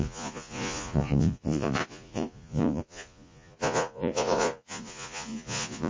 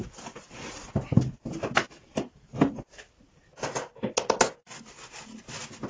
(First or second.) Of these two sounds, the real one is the second